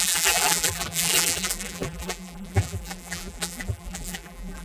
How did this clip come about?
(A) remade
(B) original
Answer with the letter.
A